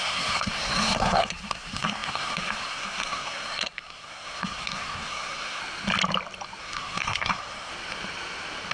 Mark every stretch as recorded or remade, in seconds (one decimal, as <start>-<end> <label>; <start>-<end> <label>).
0.0-5.6 remade; 5.6-6.6 recorded; 6.6-7.7 remade; 7.7-8.7 recorded